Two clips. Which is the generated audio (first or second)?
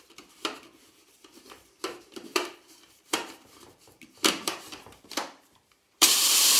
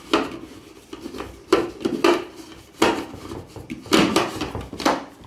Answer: first